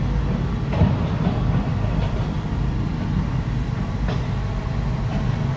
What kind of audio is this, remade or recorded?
recorded